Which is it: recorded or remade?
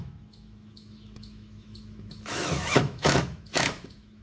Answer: remade